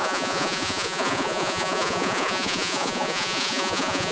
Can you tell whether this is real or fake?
fake